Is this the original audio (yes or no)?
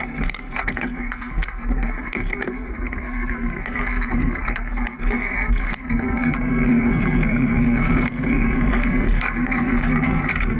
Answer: no